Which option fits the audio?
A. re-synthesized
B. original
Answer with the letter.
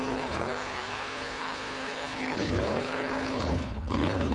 A